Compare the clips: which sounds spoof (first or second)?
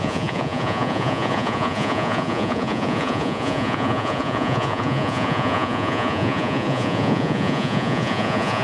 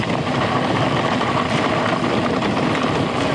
first